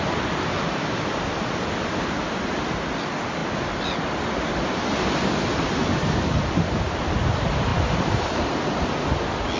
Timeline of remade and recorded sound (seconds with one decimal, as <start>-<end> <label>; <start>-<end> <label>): 0.0-9.6 recorded